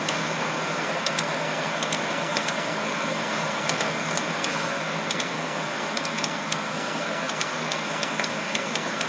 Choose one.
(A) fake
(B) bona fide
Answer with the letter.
A